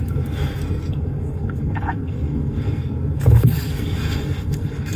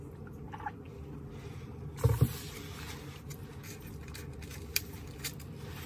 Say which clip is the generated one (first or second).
first